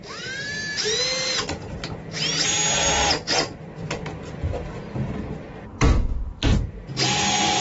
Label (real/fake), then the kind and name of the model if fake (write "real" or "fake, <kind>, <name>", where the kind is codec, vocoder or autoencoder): real